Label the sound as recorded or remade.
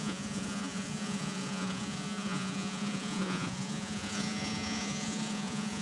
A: remade